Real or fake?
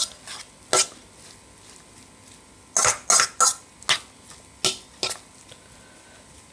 real